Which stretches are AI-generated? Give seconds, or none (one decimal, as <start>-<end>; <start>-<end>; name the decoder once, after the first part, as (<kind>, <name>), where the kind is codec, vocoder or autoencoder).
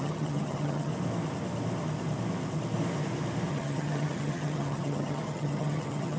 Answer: 0.0-0.9 (vocoder, HiFi-GAN); 3.5-6.2